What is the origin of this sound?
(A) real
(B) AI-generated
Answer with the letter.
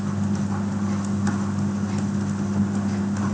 A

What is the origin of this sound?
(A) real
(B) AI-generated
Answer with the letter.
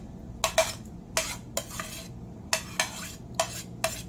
A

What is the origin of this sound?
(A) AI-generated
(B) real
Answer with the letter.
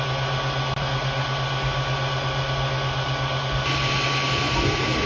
B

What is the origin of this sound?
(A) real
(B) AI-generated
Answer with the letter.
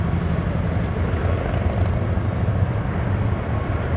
A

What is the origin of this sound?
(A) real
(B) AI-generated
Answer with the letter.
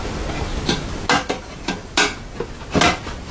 A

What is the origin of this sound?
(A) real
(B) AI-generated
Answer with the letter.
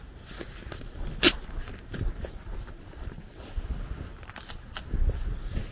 A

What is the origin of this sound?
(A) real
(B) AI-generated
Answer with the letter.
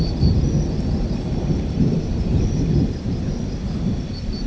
B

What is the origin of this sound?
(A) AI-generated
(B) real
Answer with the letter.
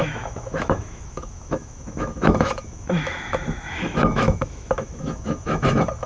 A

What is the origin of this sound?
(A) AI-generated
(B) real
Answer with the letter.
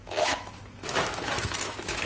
A